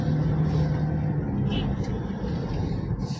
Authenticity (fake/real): real